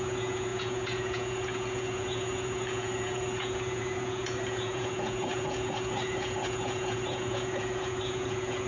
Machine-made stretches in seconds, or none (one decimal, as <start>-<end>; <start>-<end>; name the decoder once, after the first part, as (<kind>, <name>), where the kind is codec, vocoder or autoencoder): 0.0-8.7 (vocoder, Vocos)